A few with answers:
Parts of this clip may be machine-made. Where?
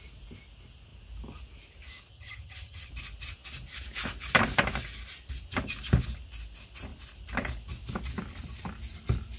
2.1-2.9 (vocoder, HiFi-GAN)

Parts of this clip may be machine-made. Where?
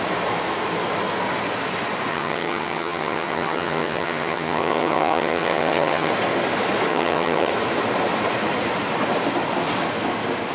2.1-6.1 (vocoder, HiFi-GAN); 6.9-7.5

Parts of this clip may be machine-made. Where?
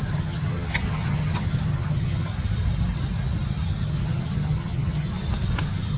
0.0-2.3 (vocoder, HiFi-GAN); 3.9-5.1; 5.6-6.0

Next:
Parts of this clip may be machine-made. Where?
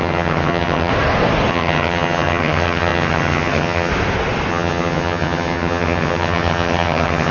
0.0-0.9 (vocoder, HiFi-GAN); 1.5-3.9; 4.5-7.3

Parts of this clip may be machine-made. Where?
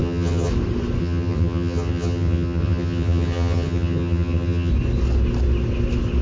0.0-0.5 (vocoder, HiFi-GAN); 1.0-4.7